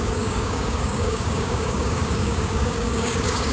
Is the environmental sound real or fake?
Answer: fake